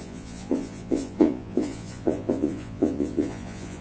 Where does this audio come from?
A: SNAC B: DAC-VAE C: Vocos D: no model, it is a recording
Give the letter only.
C